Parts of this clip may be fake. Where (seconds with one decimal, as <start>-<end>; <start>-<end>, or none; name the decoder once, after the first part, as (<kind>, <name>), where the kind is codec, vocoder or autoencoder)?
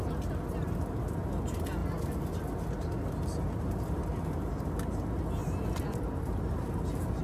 5.4-6.0 (vocoder, BigVGAN v2)